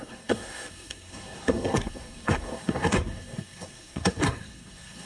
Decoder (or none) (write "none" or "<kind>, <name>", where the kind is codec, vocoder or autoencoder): codec, SNAC